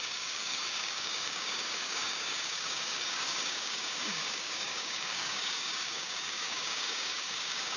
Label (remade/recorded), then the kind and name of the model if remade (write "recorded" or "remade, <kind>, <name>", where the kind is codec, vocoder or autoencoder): remade, codec, DAC